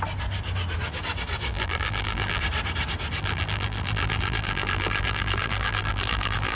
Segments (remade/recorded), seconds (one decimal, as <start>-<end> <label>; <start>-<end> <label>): 0.0-1.5 recorded; 1.5-2.4 remade; 2.4-3.2 recorded; 3.2-6.6 remade

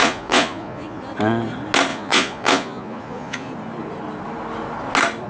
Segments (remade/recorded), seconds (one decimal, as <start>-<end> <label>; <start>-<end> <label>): 0.0-1.0 remade; 1.0-1.9 recorded; 1.9-3.5 remade; 3.5-5.3 recorded

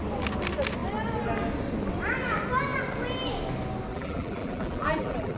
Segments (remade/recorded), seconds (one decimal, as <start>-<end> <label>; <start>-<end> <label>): 0.0-3.9 recorded; 3.9-5.4 remade

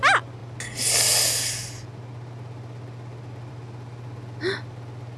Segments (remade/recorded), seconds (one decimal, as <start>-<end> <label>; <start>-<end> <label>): 0.0-5.2 recorded

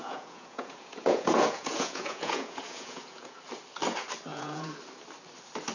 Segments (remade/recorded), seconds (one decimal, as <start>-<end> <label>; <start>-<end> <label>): 0.0-3.4 remade; 3.4-4.3 recorded; 4.3-4.8 remade; 4.8-5.7 recorded

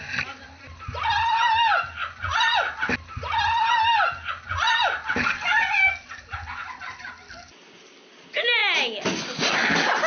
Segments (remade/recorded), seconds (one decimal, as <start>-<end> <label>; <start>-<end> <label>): 0.0-10.1 recorded

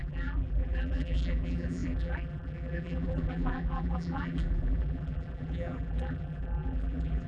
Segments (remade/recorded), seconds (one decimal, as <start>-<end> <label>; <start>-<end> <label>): 0.0-7.3 remade